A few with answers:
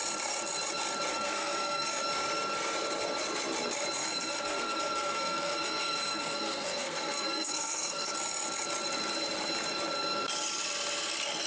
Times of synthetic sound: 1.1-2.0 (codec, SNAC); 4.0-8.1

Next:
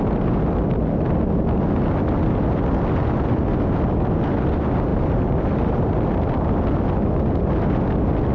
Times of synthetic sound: 4.9-5.9 (vocoder, BigVGAN v2)

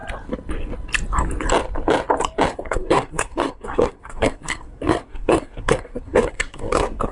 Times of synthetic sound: 2.5-7.1 (codec, SNAC)

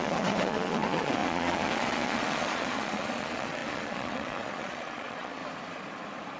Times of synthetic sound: 0.0-5.4 (vocoder, Vocos)

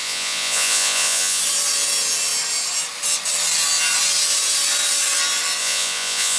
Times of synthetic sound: 0.0-1.4 (vocoder, Vocos); 5.6-6.4

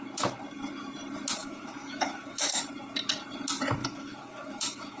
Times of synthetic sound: 1.4-2.6 (autoencoder, DAC-VAE); 3.8-5.0

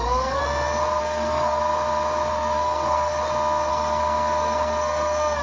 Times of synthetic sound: 0.0-0.4 (codec, SNAC); 1.0-1.6; 2.3-3.1; 3.7-5.4

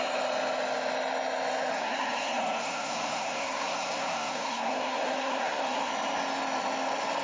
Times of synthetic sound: 1.7-5.9 (codec, SNAC)